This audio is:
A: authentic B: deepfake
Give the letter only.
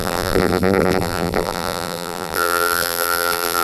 B